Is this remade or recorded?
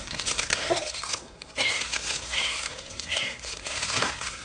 remade